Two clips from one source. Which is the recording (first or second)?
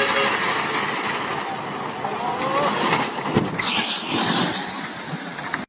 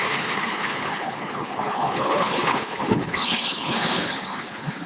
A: first